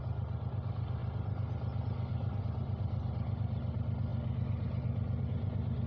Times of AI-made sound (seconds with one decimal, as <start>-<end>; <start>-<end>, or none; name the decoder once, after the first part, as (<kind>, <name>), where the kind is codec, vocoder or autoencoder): none